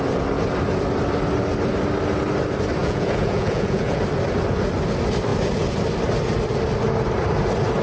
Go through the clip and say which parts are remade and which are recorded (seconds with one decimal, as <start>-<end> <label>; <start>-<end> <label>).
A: 0.0-2.8 recorded; 2.8-4.0 remade; 4.0-7.8 recorded